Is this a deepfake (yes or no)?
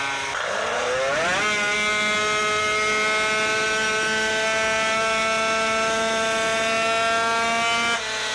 no